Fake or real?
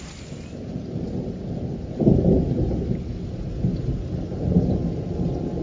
real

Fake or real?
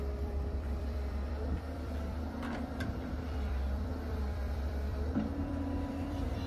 fake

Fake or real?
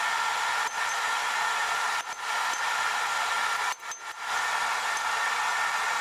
real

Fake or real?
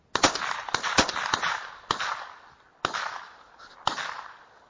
real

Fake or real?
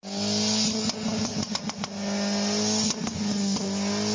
real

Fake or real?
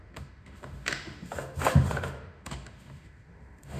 fake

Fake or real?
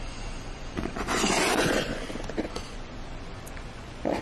fake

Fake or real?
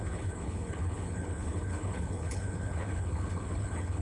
fake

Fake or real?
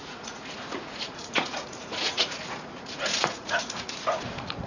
fake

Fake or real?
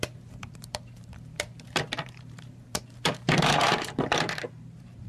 fake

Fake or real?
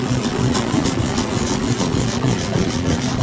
fake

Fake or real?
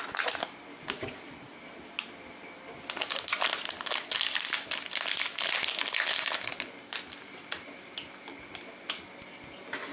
real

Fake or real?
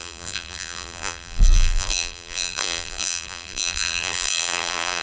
fake